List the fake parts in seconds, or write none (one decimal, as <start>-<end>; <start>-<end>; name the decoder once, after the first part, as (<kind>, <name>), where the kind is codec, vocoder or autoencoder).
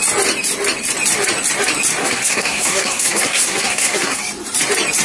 2.0-4.2 (codec, SNAC)